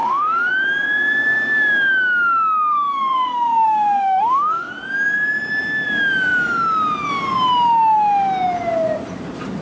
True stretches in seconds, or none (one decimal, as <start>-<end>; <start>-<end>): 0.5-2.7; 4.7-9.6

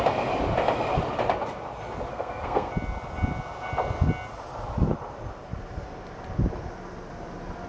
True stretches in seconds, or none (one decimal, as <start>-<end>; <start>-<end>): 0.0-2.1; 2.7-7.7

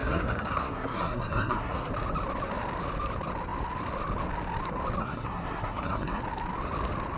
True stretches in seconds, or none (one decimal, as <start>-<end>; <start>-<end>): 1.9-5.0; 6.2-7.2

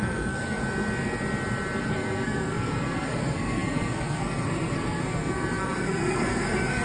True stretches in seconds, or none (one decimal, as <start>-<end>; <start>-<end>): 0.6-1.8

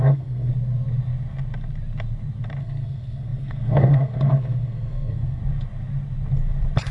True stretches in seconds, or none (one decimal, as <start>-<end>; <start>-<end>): 0.5-2.6; 5.4-6.9

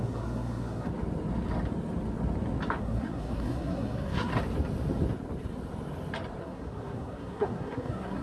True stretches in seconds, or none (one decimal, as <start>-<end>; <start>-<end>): 0.9-2.8; 4.3-6.4